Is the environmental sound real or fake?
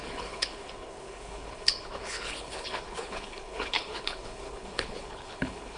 fake